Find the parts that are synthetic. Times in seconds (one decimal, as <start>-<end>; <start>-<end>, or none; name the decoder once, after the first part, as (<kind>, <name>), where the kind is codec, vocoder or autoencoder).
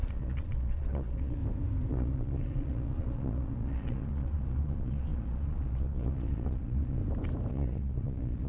0.0-1.4 (vocoder, Vocos); 1.9-7.0; 7.5-8.5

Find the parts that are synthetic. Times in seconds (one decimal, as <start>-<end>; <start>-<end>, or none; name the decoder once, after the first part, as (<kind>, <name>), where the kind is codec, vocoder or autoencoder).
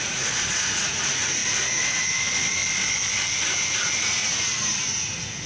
0.0-2.6 (vocoder, Vocos); 3.3-5.5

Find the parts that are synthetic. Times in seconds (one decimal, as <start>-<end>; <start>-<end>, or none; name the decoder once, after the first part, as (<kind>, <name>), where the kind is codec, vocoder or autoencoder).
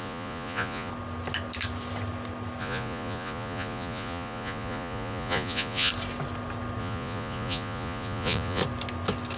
0.0-0.9 (vocoder, Vocos); 2.6-5.9; 6.8-8.6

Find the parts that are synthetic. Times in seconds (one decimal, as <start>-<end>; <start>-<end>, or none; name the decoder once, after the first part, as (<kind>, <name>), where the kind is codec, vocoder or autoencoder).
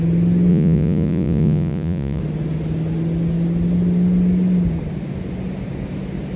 0.5-2.2 (vocoder, Vocos)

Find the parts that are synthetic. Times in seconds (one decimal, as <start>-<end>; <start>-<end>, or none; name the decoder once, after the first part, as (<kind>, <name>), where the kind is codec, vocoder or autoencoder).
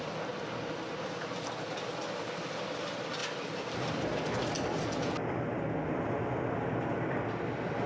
none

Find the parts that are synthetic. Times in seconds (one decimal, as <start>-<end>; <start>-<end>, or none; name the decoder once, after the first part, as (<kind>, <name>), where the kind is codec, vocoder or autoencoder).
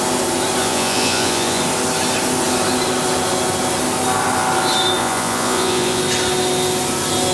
0.6-1.6 (vocoder, Vocos); 5.0-6.0